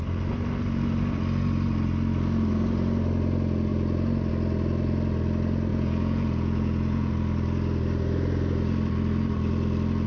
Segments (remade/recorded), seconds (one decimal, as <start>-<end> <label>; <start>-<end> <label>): 0.0-5.7 recorded; 5.7-7.1 remade; 7.1-10.1 recorded